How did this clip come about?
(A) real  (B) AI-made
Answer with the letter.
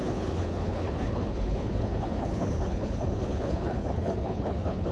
B